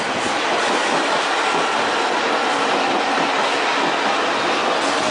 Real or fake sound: real